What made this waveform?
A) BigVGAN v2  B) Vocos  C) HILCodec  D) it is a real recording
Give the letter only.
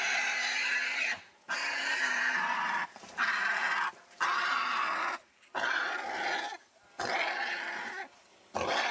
A